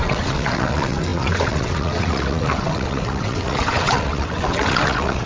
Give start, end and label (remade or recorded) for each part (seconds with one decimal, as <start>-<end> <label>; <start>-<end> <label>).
0.0-5.3 remade